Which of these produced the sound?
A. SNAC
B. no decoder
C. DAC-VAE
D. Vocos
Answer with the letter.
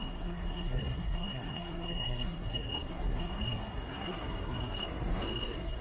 A